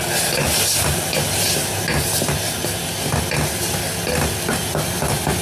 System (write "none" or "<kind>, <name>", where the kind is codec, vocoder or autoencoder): none